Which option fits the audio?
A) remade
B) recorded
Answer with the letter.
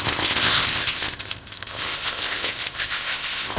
A